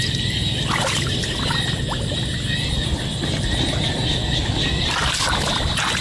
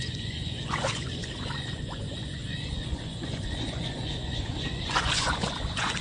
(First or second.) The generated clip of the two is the second